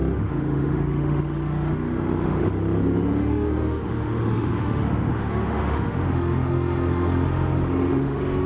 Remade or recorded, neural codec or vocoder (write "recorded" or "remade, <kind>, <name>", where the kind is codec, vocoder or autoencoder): remade, autoencoder, DAC-VAE